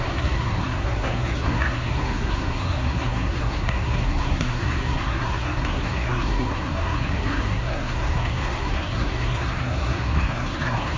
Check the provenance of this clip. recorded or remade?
remade